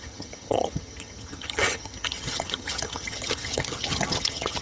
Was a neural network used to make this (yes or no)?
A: yes